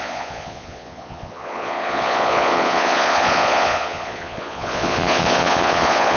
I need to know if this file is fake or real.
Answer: fake